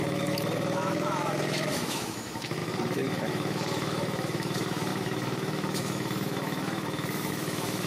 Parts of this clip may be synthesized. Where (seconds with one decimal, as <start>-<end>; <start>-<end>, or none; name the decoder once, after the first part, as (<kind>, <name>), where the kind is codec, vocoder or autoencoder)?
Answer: 0.0-7.9 (autoencoder, DAC-VAE)